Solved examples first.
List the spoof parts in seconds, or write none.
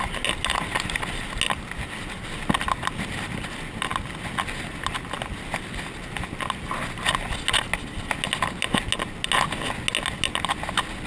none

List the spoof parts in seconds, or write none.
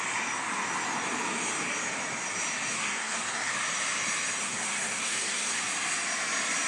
2.7-3.5 (codec, SNAC); 4.4-5.6